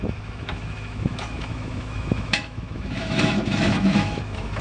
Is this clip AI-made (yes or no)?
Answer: yes